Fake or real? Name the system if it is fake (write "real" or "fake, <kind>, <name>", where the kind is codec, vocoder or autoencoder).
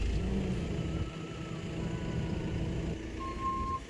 real